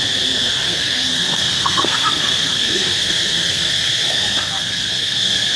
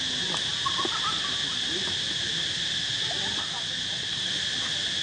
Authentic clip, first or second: second